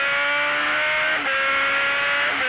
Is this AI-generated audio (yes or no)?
no